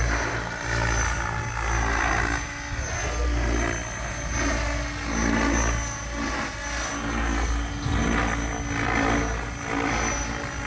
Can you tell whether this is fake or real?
real